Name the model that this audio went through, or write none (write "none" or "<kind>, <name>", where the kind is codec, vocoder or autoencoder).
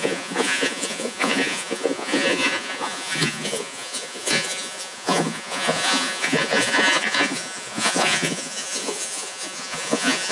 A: vocoder, Vocos